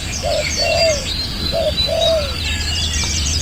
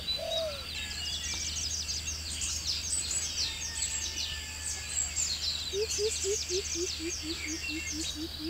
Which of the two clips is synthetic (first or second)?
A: first